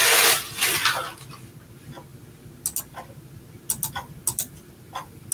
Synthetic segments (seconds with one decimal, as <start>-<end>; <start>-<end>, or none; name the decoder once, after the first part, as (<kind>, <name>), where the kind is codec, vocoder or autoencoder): none